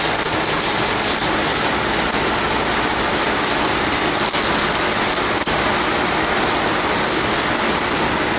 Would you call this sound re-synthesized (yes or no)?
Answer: no